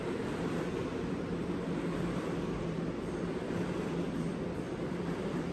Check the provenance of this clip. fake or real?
fake